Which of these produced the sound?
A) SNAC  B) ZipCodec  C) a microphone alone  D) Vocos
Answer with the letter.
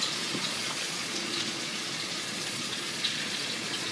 D